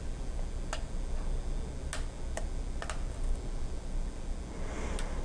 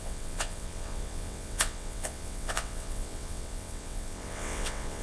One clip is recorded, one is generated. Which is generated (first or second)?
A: second